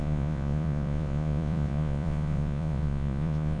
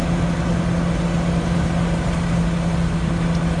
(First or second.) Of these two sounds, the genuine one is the second